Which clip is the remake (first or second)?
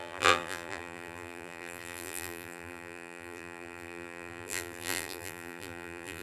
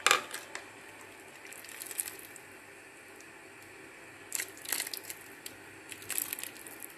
first